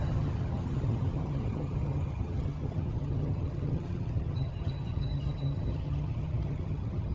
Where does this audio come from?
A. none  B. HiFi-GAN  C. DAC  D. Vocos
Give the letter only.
B